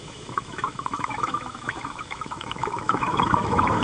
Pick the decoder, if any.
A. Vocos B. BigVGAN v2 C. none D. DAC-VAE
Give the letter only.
D